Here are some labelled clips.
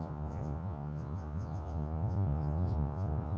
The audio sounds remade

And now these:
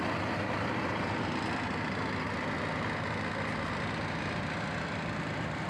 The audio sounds recorded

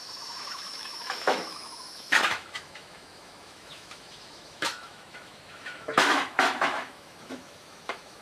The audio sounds remade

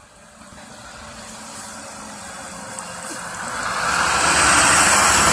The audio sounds recorded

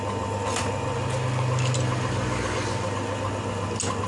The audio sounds recorded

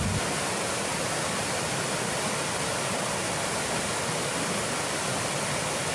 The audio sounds recorded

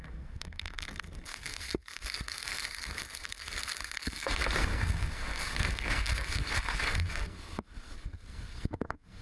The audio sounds remade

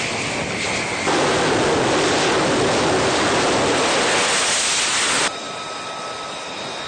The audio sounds recorded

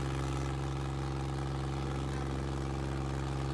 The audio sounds recorded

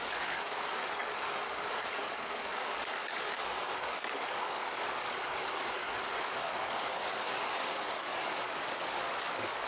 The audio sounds remade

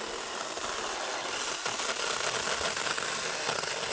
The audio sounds recorded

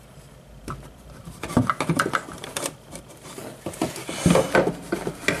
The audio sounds recorded